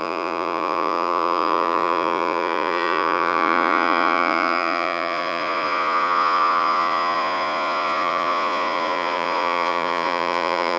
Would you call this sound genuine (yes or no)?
no